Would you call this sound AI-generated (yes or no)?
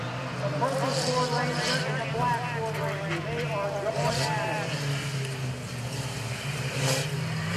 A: no